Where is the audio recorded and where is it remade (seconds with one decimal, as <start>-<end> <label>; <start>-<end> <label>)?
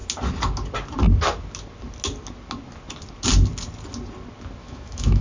0.0-4.6 recorded; 4.6-5.2 remade